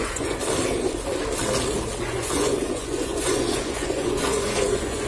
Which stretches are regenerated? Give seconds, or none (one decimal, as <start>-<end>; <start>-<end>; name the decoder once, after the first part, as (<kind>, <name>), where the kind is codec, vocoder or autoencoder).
0.0-0.4 (vocoder, Vocos); 2.0-5.1